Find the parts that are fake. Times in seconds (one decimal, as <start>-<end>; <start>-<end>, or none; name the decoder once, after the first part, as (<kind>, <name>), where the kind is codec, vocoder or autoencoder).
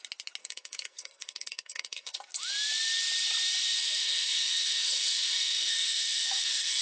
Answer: 0.4-2.2 (codec, SNAC); 3.8-6.8